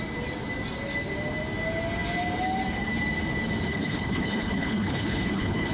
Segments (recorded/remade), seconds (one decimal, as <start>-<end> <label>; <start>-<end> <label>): 0.0-3.7 recorded; 3.7-5.7 remade